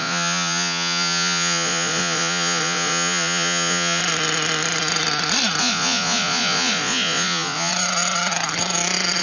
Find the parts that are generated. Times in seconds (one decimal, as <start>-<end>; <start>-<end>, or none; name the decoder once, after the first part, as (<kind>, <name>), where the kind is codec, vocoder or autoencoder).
0.0-4.0 (vocoder, Vocos); 5.6-7.7